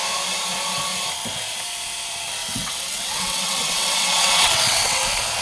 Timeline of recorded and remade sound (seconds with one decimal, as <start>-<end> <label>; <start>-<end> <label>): 0.0-2.4 recorded; 2.4-5.0 remade; 5.0-5.4 recorded

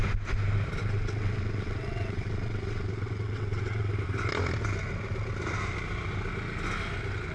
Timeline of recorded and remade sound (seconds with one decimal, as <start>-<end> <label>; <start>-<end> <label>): 0.0-0.8 recorded; 0.8-3.9 remade; 3.9-7.3 recorded